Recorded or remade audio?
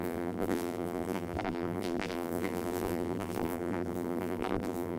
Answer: remade